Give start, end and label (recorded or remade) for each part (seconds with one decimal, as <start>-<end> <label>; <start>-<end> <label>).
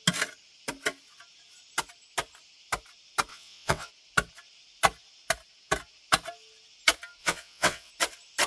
0.0-3.3 recorded; 3.3-3.9 remade; 3.9-7.2 recorded; 7.2-7.9 remade; 7.9-8.5 recorded